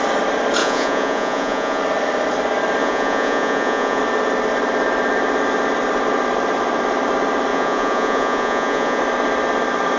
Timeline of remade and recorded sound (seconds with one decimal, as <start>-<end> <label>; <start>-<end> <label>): 0.0-0.6 recorded; 0.6-1.8 remade; 1.8-2.8 recorded; 2.8-4.0 remade; 4.0-7.5 recorded; 7.5-9.0 remade; 9.0-10.0 recorded